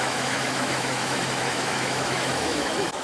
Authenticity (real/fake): fake